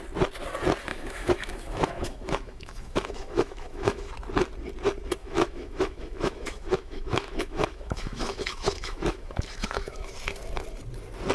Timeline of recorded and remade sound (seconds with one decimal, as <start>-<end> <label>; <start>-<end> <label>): 0.0-0.9 recorded; 0.9-4.1 remade; 4.1-5.2 recorded; 5.2-10.1 remade; 10.1-11.3 recorded